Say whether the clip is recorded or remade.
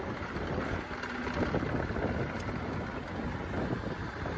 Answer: recorded